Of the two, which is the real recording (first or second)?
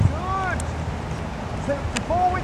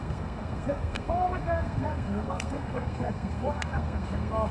first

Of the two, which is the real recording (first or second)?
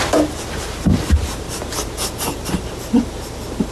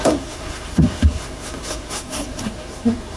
first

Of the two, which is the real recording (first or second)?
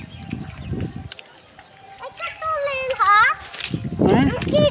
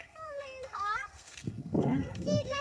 first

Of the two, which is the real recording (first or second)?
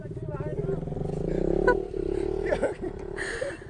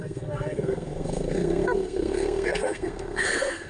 first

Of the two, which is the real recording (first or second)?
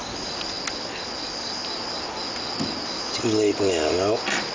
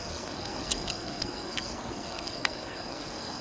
first